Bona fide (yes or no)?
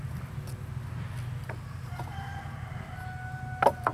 yes